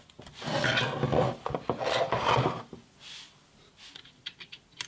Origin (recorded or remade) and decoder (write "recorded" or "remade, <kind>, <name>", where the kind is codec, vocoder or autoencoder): recorded